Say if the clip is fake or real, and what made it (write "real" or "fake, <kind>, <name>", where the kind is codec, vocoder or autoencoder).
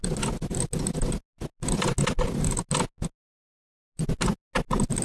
real